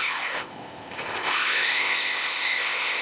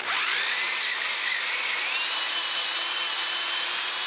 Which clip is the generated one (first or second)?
first